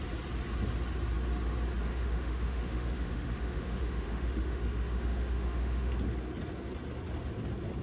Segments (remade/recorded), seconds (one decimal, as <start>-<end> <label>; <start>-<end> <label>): 0.0-1.9 recorded; 1.9-5.9 remade; 5.9-7.8 recorded